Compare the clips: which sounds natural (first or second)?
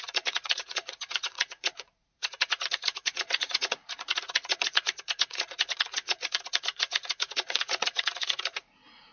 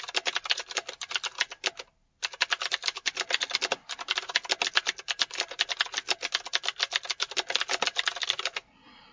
second